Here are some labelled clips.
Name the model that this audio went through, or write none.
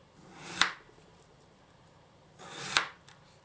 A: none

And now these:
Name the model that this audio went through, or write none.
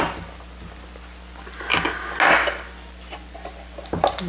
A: none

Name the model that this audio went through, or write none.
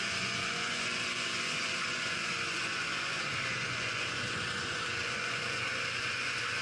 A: vocoder, Vocos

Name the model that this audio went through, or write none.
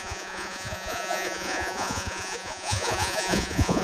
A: vocoder, Vocos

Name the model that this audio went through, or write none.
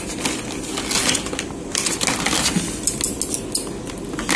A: none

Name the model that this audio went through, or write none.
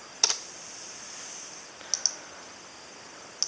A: none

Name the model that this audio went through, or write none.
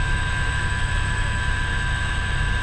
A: autoencoder, DAC-VAE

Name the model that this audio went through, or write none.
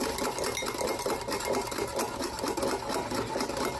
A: none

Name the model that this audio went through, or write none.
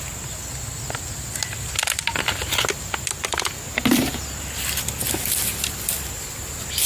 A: none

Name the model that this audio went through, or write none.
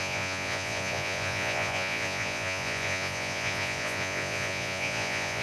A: vocoder, Vocos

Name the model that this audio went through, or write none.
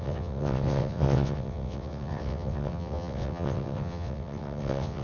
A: vocoder, WaveNeXt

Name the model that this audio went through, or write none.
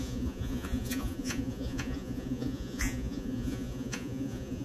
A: vocoder, Vocos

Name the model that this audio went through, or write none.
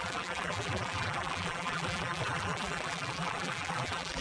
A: vocoder, BigVGAN v2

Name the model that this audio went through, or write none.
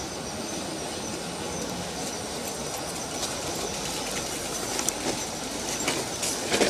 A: none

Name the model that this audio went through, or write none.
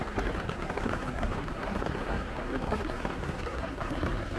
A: codec, SNAC